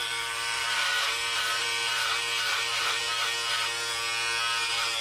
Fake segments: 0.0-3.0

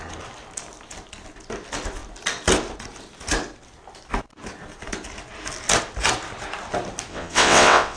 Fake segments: 7.1-8.0